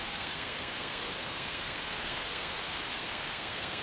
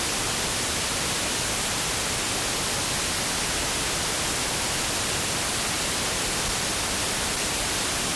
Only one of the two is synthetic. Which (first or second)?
first